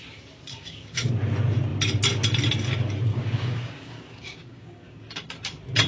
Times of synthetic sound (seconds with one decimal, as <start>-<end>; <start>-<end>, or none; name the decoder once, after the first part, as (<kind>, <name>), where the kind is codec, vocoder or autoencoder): 0.5-1.1 (codec, DAC); 3.1-5.3